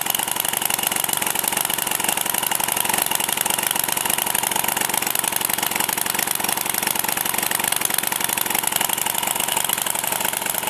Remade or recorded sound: recorded